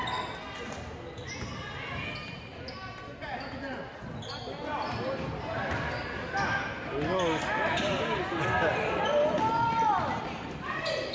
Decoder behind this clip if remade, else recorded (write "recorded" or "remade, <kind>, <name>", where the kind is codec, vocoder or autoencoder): recorded